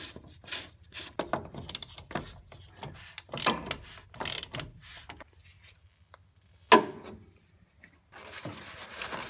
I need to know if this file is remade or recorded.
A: recorded